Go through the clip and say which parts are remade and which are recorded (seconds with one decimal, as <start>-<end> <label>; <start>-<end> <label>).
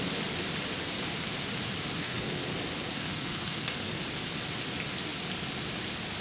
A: 0.0-2.0 recorded; 2.0-2.5 remade; 2.5-2.9 recorded; 2.9-4.0 remade; 4.0-6.2 recorded